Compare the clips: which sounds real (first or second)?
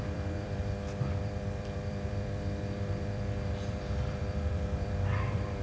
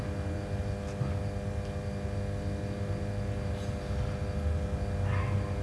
second